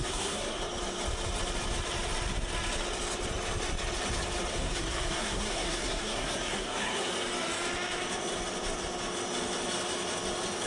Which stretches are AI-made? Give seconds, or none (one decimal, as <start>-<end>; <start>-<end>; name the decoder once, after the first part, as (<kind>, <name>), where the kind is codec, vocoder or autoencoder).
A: 0.0-0.6 (codec, SNAC); 4.5-7.1

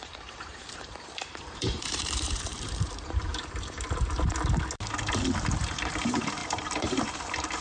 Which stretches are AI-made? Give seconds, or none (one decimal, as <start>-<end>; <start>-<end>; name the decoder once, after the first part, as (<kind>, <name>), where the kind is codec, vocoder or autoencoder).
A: 0.0-3.3 (vocoder, BigVGAN v2); 5.6-7.6

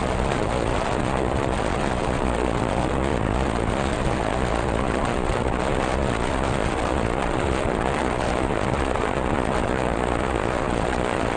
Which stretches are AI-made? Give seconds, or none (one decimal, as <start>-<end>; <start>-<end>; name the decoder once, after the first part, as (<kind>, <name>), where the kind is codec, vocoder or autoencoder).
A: 0.0-11.4 (vocoder, Vocos)